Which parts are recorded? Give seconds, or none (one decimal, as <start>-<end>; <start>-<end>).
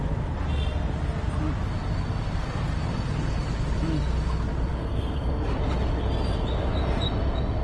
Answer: 0.0-4.7; 5.6-7.6